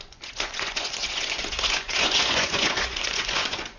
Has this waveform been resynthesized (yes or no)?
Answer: yes